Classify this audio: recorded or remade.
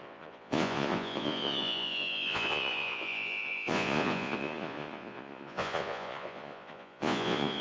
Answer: remade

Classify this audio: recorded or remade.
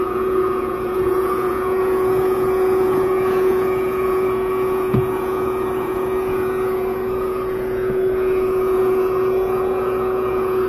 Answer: remade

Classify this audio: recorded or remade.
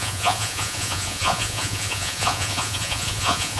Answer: remade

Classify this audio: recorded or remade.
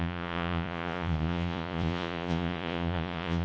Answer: remade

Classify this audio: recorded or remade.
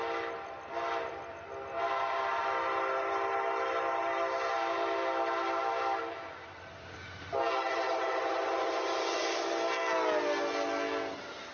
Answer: recorded